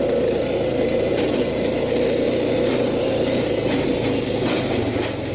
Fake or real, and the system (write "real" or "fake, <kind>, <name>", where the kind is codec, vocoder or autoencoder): real